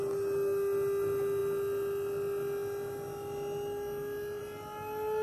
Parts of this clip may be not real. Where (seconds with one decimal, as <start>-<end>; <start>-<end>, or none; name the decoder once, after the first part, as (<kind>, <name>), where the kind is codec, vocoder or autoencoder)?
none